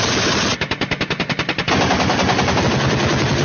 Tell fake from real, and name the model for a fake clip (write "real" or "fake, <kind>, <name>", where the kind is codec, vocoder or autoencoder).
real